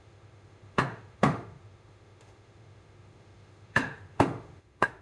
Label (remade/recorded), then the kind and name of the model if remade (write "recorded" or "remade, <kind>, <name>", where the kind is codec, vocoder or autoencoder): remade, autoencoder, DAC-VAE